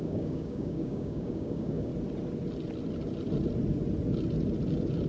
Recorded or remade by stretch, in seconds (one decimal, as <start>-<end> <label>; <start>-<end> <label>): 0.0-1.9 remade; 1.9-5.1 recorded